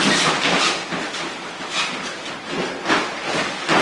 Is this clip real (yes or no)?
yes